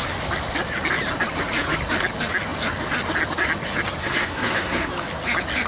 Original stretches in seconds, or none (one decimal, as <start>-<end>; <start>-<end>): 0.0-4.0; 4.9-5.7